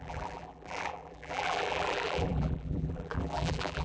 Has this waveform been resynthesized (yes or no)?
yes